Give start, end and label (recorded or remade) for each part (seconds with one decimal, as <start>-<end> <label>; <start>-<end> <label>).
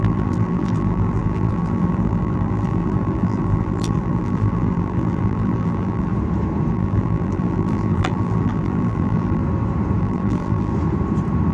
0.0-6.1 remade; 6.1-6.7 recorded; 6.7-9.4 remade; 9.4-10.0 recorded; 10.0-10.7 remade; 10.7-11.5 recorded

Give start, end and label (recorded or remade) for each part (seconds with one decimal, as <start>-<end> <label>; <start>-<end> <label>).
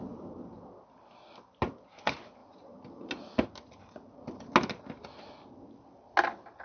0.0-6.6 recorded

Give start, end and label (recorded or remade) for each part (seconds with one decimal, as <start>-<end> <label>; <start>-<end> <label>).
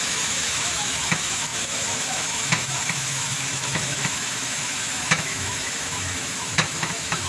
0.0-7.3 remade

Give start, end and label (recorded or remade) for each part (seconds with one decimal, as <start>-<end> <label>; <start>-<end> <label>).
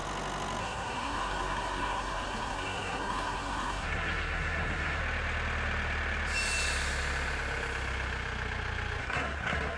0.0-0.6 recorded; 0.6-5.0 remade; 5.0-9.0 recorded; 9.0-9.8 remade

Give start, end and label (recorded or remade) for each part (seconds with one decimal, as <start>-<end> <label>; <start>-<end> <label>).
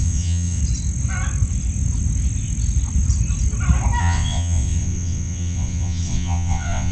0.0-0.6 remade; 0.6-4.0 recorded; 4.0-6.9 remade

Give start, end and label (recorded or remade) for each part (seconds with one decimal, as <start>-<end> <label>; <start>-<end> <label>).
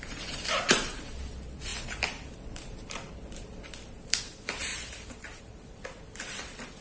0.0-6.8 remade